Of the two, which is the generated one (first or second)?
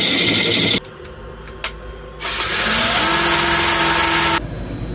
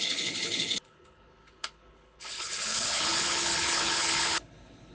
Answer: second